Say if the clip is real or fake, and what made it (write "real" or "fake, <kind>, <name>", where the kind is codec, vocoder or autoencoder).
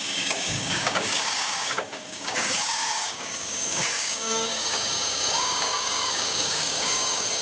fake, codec, DAC